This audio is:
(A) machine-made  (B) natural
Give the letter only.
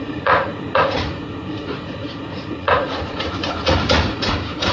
A